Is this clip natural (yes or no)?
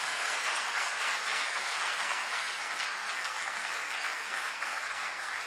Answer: no